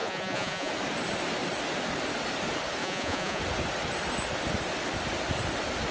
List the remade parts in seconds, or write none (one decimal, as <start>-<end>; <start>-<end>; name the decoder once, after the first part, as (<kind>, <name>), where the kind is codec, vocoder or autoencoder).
0.0-0.7 (vocoder, Vocos); 2.8-3.4